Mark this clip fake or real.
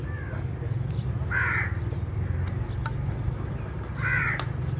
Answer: real